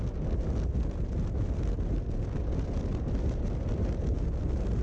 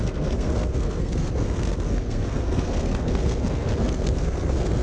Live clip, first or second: first